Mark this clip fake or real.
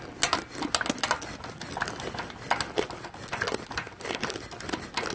real